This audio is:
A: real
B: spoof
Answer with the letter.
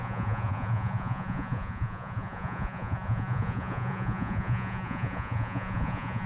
B